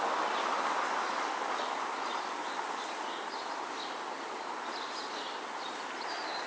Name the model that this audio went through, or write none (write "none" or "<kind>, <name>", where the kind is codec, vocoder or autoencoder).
none